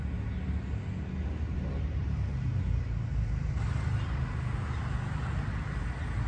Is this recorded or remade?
recorded